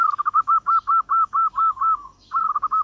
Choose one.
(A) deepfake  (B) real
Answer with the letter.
A